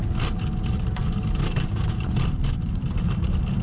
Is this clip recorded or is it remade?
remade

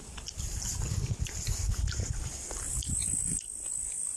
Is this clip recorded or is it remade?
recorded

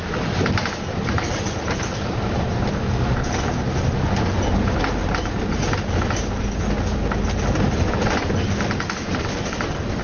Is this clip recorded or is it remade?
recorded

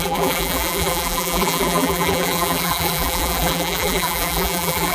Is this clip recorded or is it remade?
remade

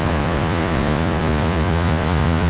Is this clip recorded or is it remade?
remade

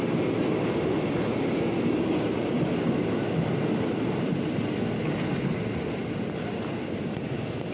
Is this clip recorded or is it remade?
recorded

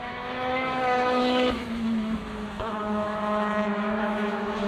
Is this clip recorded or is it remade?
remade